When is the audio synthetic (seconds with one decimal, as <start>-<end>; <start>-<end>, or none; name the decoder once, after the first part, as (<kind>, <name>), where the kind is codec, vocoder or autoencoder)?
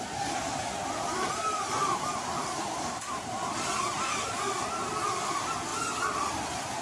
1.1-4.4 (vocoder, BigVGAN v2)